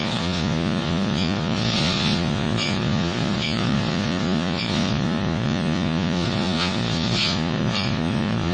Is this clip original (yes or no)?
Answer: no